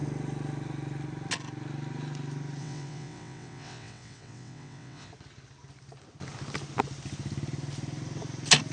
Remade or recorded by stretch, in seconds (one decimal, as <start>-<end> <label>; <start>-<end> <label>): 0.0-2.6 recorded; 2.6-5.1 remade; 5.1-8.7 recorded